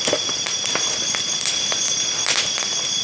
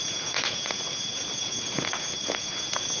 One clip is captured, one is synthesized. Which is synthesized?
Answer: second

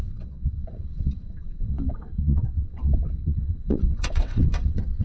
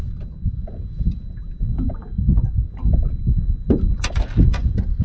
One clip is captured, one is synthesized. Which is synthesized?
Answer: first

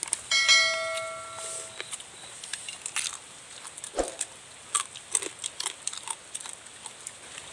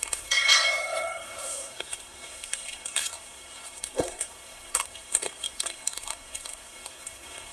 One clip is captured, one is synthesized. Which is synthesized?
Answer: second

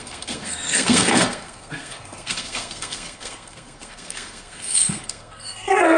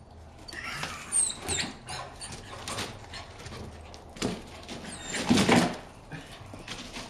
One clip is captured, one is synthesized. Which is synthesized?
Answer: first